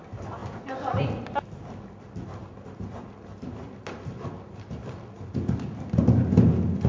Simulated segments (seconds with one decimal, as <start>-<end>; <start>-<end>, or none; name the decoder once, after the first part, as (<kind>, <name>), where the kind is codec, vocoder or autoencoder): none